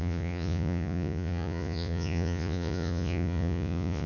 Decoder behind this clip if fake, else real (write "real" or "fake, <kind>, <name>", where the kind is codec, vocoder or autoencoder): fake, vocoder, Vocos